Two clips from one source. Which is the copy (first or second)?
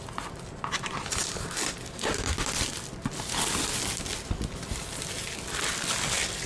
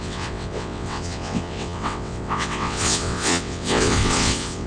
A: second